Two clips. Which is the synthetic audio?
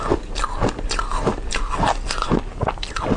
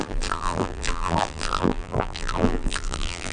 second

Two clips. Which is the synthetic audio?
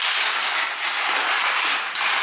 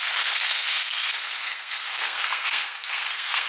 second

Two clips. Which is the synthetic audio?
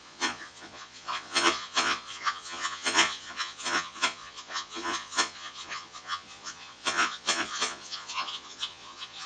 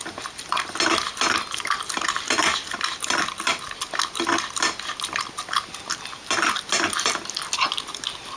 first